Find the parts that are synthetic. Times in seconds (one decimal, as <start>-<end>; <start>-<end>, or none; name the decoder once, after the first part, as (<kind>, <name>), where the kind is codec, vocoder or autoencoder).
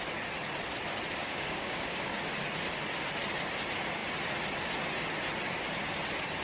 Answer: 1.2-2.1 (codec, DAC)